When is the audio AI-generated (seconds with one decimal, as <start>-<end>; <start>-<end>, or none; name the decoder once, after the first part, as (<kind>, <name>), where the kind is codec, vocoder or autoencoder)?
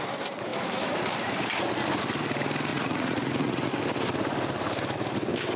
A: 2.7-3.7 (vocoder, Vocos)